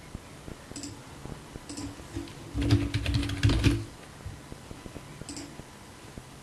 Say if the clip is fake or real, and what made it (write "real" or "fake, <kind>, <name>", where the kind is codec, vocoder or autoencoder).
real